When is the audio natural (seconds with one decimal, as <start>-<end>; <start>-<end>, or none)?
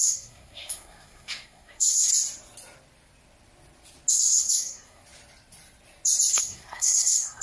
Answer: 2.1-4.1; 5.0-6.4